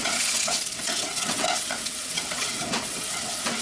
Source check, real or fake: fake